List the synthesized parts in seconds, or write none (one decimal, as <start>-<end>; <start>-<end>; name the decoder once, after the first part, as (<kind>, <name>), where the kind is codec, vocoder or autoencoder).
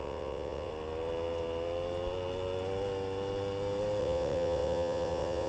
0.0-0.7 (vocoder, WaveNeXt); 4.0-5.5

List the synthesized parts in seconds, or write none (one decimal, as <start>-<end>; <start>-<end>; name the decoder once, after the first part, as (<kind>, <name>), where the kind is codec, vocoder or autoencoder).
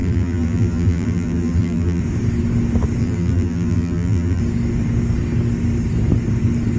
0.0-2.0 (vocoder, BigVGAN v2); 3.0-4.4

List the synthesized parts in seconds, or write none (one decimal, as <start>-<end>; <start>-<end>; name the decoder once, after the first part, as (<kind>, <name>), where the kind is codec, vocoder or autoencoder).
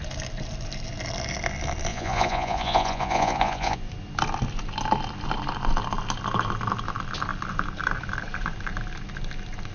1.9-3.8 (vocoder, Vocos)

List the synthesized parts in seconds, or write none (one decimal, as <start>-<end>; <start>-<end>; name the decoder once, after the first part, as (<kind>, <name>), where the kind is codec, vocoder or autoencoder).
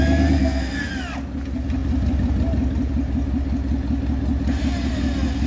0.4-0.9 (codec, SNAC)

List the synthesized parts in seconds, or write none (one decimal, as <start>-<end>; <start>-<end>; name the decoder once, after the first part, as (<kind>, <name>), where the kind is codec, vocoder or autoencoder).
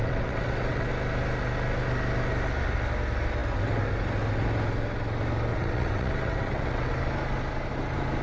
0.0-0.9 (vocoder, WaveNeXt); 5.5-6.9